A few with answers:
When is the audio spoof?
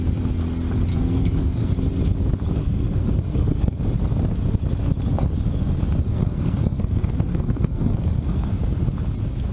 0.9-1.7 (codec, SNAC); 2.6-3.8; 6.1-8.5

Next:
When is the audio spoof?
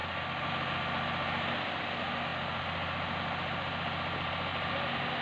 none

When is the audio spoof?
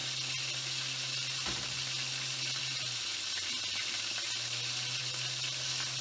none